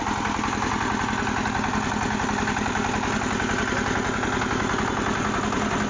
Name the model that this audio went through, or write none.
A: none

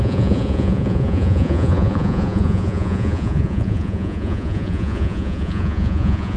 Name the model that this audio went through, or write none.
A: vocoder, Vocos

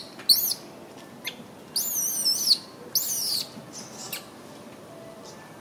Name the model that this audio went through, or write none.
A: none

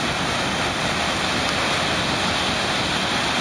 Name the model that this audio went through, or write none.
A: none